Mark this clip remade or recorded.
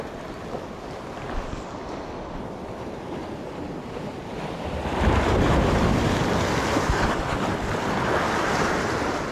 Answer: recorded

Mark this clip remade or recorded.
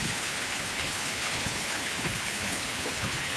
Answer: remade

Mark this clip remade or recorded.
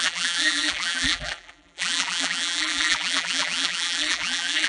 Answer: remade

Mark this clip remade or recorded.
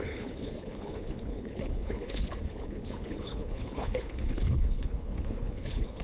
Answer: remade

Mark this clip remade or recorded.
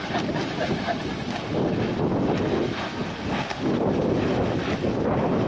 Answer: recorded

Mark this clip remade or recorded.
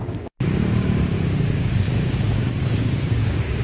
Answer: remade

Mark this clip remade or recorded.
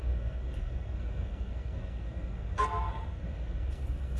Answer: remade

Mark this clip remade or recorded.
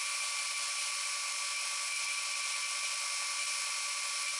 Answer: recorded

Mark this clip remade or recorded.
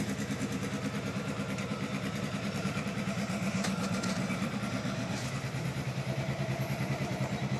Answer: remade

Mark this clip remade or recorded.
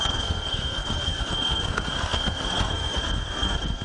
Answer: remade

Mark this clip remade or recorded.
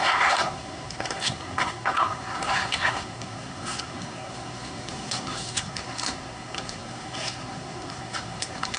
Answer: remade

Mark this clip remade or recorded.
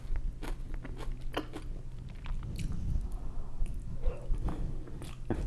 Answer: recorded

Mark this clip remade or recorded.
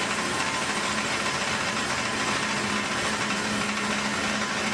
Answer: recorded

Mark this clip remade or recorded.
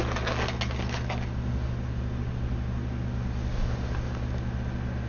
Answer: recorded